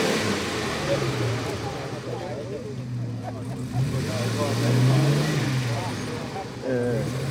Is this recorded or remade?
recorded